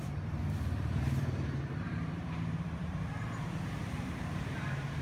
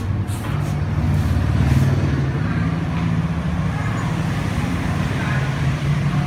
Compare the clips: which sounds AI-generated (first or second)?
first